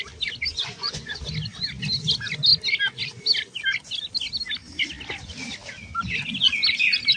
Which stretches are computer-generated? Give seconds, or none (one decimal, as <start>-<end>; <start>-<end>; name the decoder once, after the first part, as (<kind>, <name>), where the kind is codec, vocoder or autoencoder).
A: 0.5-1.2 (vocoder, Vocos)